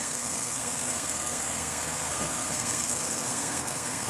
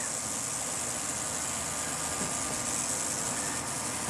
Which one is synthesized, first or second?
first